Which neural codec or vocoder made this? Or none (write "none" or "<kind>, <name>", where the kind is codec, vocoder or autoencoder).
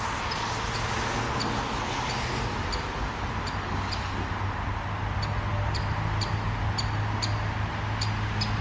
none